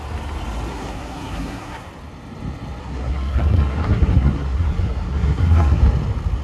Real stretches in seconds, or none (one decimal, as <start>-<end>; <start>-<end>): 0.0-0.7; 1.9-2.8; 5.8-6.4